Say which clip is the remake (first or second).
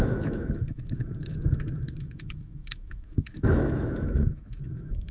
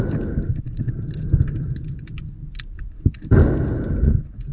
first